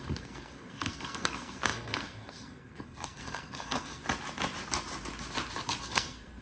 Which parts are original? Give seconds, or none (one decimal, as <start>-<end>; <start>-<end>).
4.0-5.8